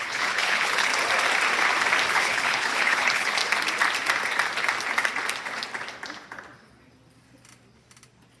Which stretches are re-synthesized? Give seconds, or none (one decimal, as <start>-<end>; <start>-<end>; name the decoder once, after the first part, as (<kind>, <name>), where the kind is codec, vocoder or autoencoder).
0.0-0.9 (codec, HILCodec); 2.1-3.4